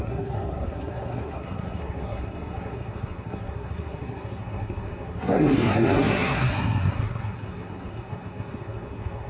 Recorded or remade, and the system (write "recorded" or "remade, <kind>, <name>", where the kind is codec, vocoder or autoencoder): remade, codec, SNAC